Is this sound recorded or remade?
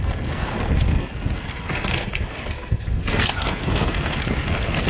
remade